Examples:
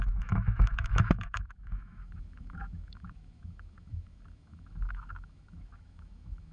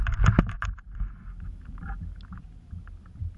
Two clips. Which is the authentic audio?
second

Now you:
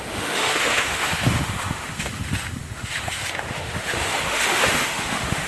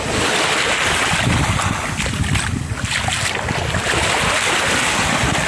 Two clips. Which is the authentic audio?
second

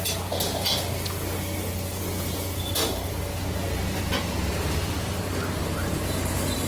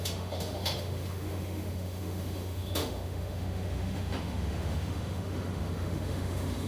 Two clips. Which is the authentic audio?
first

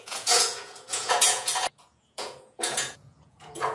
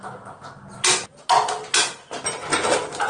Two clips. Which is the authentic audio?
second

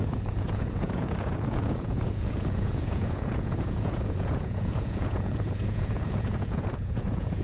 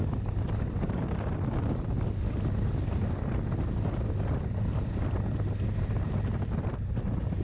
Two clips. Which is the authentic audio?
second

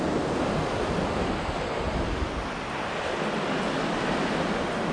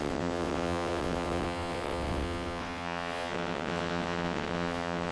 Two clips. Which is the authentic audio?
first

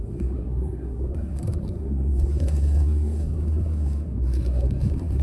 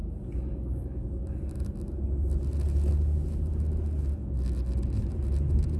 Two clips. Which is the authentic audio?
second